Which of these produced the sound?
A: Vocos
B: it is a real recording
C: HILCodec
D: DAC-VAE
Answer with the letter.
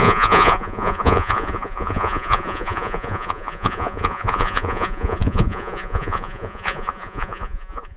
A